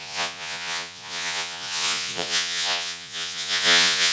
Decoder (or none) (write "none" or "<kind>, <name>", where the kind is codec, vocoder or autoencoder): vocoder, Vocos